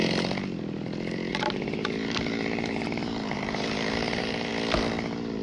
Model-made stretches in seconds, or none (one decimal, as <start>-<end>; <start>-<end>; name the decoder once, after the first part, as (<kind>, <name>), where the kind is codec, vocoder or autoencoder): 1.3-4.5 (vocoder, BigVGAN v2)